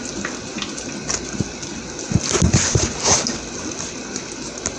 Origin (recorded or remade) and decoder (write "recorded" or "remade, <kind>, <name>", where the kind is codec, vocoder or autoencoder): recorded